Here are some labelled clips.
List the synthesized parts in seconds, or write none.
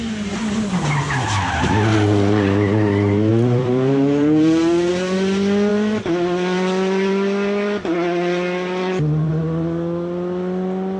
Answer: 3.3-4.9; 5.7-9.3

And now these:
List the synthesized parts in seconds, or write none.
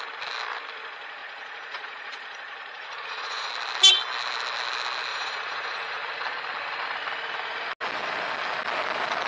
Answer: 1.2-3.5; 5.1-6.0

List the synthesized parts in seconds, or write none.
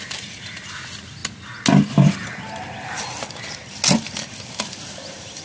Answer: none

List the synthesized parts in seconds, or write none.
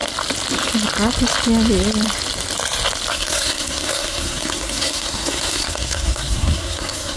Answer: 3.1-7.2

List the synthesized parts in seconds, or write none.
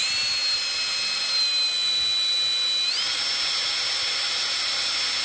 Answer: none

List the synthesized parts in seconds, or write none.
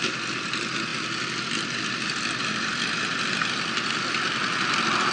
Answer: none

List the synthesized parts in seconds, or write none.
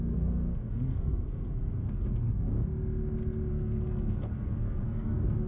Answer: 0.0-2.5; 3.5-5.5